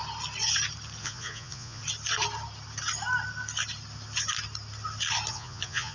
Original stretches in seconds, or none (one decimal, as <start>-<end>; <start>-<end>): 0.0-1.0; 1.8-5.3